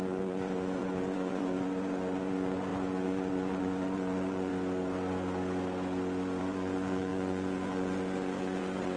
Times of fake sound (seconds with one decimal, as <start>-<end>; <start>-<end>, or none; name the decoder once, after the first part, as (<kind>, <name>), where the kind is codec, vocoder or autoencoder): 0.0-4.5 (vocoder, Vocos); 6.4-9.0